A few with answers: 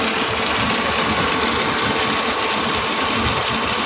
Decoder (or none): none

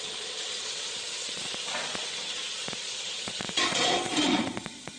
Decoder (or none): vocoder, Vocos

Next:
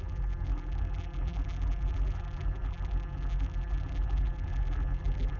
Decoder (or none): vocoder, BigVGAN v2